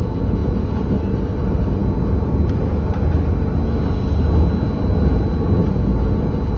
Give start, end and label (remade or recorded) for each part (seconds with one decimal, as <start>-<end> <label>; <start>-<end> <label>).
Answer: 0.0-6.6 recorded